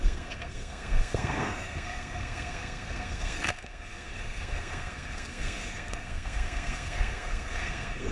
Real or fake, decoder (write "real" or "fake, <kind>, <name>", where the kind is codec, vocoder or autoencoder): fake, codec, SNAC